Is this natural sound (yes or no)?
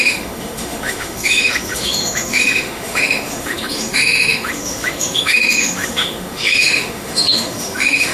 no